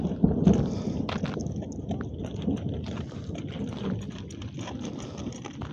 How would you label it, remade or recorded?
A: recorded